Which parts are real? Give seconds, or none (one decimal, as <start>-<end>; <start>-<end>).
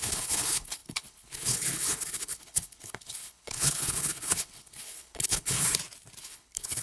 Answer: 5.7-6.2